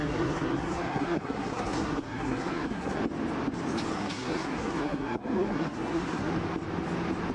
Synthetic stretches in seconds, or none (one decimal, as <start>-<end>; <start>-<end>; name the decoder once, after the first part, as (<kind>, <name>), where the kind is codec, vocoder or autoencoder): 0.0-3.0 (codec, SNAC); 3.9-6.3